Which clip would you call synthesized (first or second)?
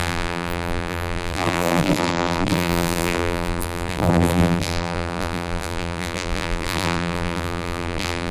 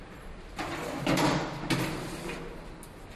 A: first